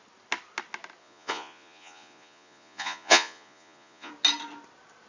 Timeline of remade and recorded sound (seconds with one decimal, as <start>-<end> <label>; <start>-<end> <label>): 0.0-1.0 recorded; 1.0-4.1 remade; 4.1-5.1 recorded